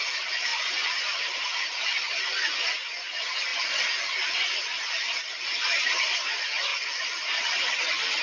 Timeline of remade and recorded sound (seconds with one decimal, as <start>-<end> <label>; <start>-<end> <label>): 0.0-0.5 recorded; 0.5-2.2 remade; 2.2-6.7 recorded; 6.7-8.2 remade